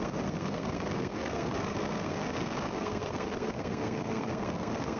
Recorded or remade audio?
remade